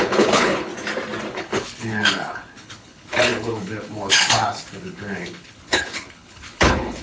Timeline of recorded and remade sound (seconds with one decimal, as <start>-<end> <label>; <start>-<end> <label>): 0.0-0.7 remade; 0.7-1.3 recorded; 1.3-7.0 remade